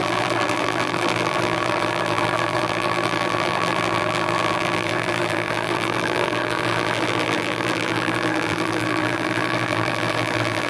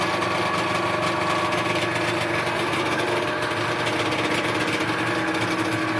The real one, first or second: second